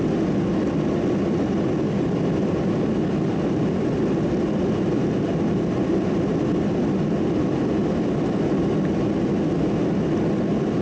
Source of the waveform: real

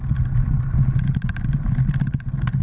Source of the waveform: real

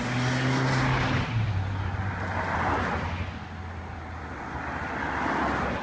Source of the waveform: real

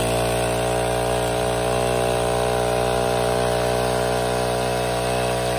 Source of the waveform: real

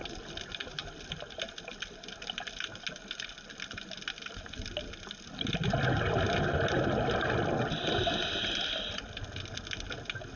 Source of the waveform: real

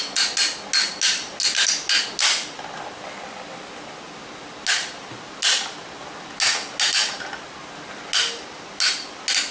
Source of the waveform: real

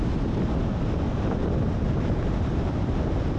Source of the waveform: fake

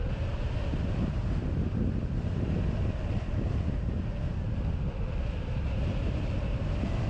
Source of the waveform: real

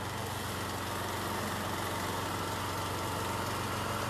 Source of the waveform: real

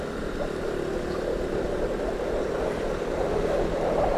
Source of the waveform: real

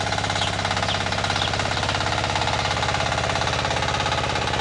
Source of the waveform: real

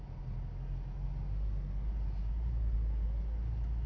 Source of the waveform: real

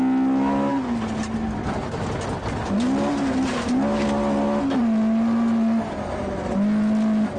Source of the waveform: real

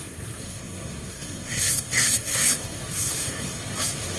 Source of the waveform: fake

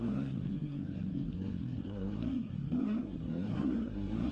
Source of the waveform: fake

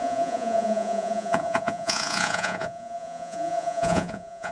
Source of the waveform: fake